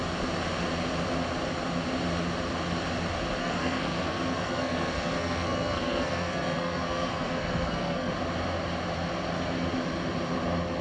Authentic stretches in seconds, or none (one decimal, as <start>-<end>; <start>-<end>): 0.0-3.4; 8.1-10.8